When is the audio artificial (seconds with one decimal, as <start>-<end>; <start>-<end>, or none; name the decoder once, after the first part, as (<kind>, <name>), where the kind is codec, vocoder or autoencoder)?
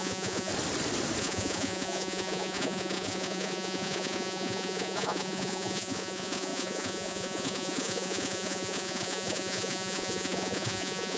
0.0-0.5 (vocoder, Vocos); 1.2-11.2